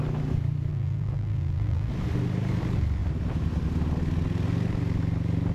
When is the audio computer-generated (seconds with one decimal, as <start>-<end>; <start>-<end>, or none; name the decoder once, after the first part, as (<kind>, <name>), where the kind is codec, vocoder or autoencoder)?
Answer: 0.7-1.9 (vocoder, BigVGAN v2)